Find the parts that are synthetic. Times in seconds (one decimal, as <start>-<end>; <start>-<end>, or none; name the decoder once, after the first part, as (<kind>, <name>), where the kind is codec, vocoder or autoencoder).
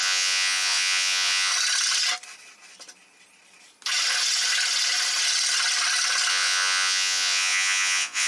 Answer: 0.0-1.5 (vocoder, Vocos); 6.3-8.3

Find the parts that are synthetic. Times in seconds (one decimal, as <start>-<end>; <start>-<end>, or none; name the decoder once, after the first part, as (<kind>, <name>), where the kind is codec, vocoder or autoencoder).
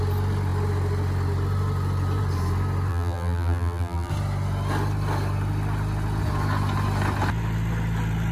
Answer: 2.9-4.1 (vocoder, BigVGAN v2)